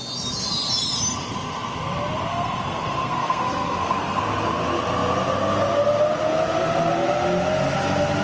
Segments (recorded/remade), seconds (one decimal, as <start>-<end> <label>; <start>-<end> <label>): 0.0-2.3 recorded; 2.3-4.2 remade; 4.2-8.2 recorded